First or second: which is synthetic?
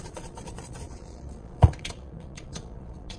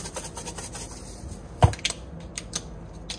first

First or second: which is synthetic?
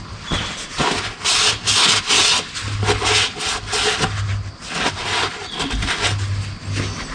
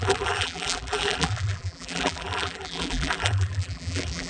second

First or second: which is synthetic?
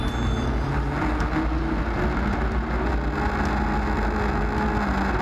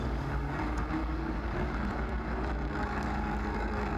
second